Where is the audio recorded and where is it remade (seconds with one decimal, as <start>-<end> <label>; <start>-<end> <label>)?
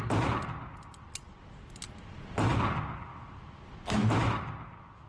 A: 0.0-5.1 recorded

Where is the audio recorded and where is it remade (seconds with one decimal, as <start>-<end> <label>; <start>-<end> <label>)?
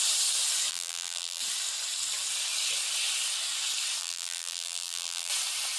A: 0.0-0.7 recorded; 0.7-1.4 remade; 1.4-4.0 recorded; 4.0-5.3 remade; 5.3-5.8 recorded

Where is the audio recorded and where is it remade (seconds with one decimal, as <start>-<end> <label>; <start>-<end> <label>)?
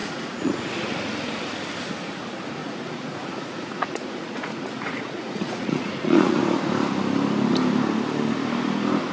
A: 0.0-0.6 remade; 0.6-2.6 recorded; 2.6-6.4 remade; 6.4-9.1 recorded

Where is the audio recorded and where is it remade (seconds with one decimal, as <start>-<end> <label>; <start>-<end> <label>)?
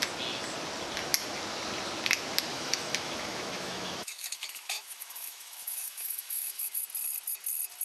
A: 0.0-2.5 recorded; 2.5-6.8 remade; 6.8-7.8 recorded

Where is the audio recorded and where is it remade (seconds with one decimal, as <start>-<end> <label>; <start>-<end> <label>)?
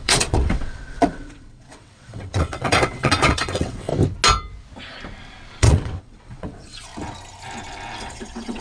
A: 0.0-3.9 remade; 3.9-5.6 recorded; 5.6-6.9 remade; 6.9-8.0 recorded; 8.0-8.6 remade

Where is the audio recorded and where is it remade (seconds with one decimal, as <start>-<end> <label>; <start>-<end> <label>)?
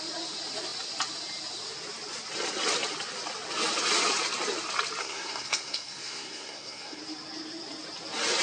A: 0.0-5.0 recorded; 5.0-7.0 remade; 7.0-8.4 recorded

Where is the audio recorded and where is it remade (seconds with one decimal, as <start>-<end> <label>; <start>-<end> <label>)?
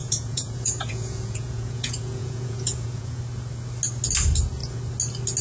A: 0.0-3.2 remade; 3.2-5.4 recorded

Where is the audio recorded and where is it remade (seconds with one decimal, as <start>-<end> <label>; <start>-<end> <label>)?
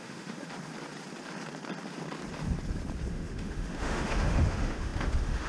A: 0.0-0.5 remade; 0.5-3.1 recorded; 3.1-5.5 remade